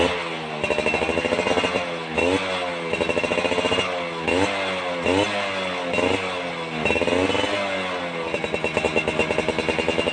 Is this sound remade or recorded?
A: recorded